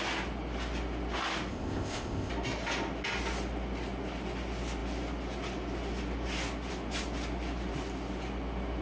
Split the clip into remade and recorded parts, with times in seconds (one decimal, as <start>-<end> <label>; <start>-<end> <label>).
0.0-1.5 recorded; 1.5-2.3 remade; 2.3-8.8 recorded